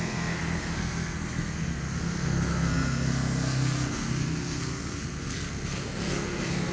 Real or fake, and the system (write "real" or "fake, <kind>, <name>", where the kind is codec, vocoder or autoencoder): fake, codec, SNAC